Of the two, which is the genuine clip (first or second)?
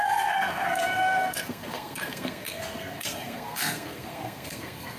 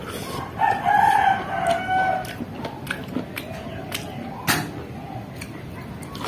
second